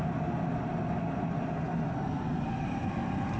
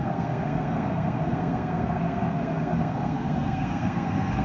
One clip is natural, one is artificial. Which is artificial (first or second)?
second